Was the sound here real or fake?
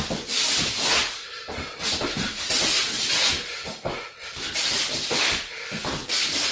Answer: fake